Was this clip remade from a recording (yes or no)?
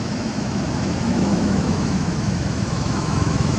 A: yes